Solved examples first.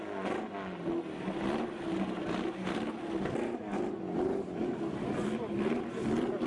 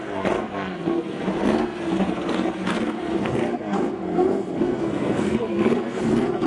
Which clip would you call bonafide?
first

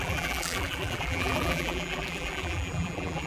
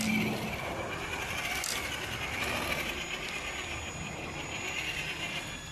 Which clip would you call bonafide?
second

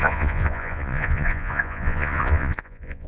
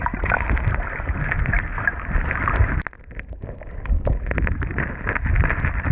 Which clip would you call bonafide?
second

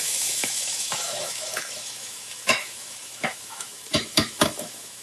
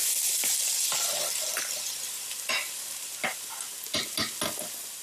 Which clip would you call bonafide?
second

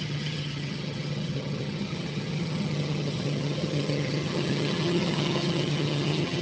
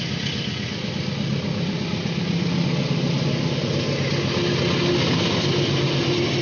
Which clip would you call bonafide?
second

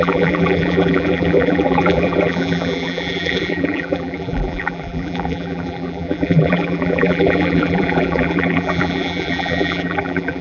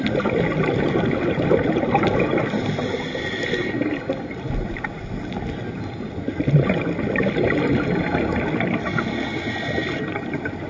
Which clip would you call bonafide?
second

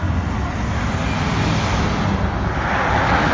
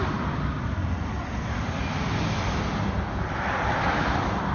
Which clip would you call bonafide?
first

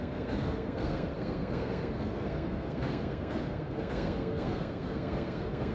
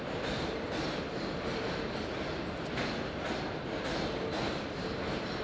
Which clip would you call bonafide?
second